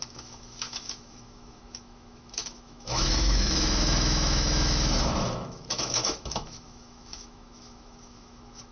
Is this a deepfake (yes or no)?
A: yes